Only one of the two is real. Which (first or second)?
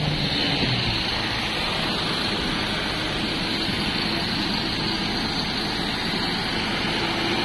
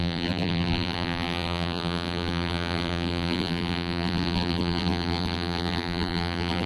first